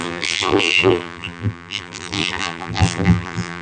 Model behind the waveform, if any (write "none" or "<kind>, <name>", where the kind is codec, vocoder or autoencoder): vocoder, BigVGAN v2